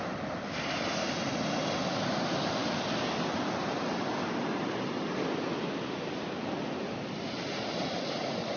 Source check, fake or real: real